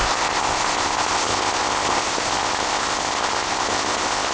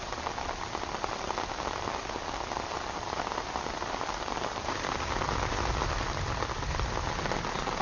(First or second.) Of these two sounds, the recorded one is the second